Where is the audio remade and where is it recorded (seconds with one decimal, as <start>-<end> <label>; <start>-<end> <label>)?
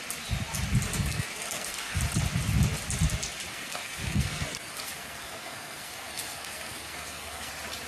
0.0-0.9 recorded; 0.9-2.0 remade; 2.0-3.5 recorded; 3.5-7.5 remade; 7.5-7.9 recorded